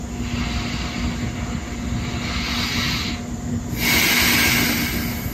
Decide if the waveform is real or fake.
real